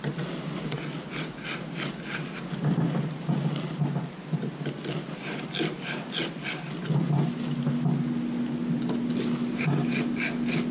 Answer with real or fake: real